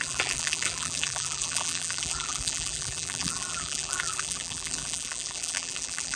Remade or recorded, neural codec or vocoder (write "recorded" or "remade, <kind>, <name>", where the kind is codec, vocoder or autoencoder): remade, vocoder, BigVGAN v2